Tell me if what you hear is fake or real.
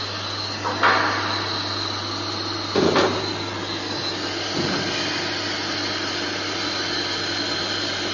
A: real